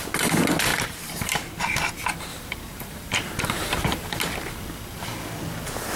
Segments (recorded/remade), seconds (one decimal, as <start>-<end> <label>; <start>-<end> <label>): 0.0-0.7 recorded; 0.7-1.6 remade; 1.6-2.3 recorded; 2.3-4.2 remade; 4.2-6.0 recorded

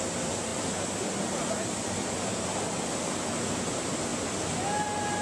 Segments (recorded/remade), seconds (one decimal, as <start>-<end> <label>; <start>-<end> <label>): 0.0-0.5 remade; 0.5-3.6 recorded; 3.6-4.1 remade; 4.1-5.2 recorded

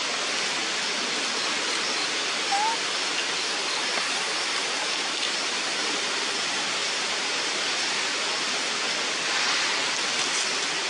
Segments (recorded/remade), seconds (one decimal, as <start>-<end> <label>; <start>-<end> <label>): 0.0-6.8 recorded; 6.8-7.7 remade; 7.7-10.9 recorded

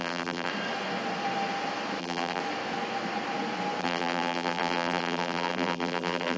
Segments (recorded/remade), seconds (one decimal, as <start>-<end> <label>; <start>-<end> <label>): 0.0-0.5 remade; 0.5-2.0 recorded; 2.0-2.4 remade; 2.4-3.8 recorded; 3.8-6.4 remade

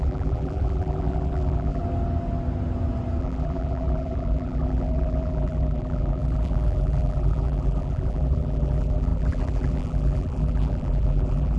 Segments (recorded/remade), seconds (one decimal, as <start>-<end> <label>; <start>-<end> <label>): 0.0-1.8 remade; 1.8-3.2 recorded; 3.2-11.6 remade

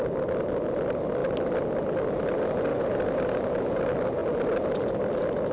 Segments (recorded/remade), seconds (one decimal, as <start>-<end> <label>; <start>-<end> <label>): 0.0-2.7 recorded; 2.7-3.8 remade; 3.8-5.5 recorded

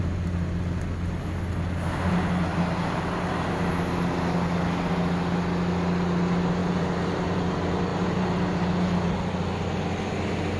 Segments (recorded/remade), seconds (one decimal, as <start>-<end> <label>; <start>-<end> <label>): 0.0-2.5 recorded; 2.5-3.7 remade; 3.7-6.6 recorded; 6.6-7.3 remade; 7.3-7.9 recorded; 7.9-9.1 remade; 9.1-10.6 recorded

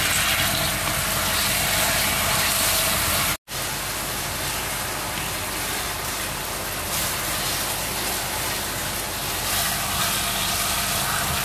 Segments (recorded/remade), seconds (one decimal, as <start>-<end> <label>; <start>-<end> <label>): 0.0-11.4 recorded